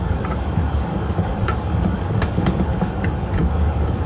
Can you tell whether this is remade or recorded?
remade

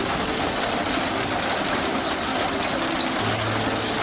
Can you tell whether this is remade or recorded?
recorded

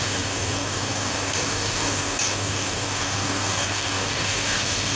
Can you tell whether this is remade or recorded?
remade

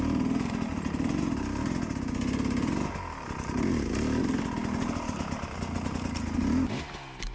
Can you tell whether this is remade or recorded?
recorded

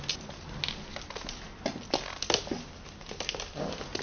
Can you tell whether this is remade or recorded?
recorded